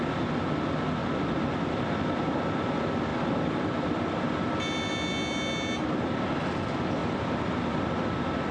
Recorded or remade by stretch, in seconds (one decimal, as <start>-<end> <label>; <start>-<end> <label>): 0.0-1.0 recorded; 1.0-1.6 remade; 1.6-3.1 recorded; 3.1-4.9 remade; 4.9-7.0 recorded; 7.0-8.5 remade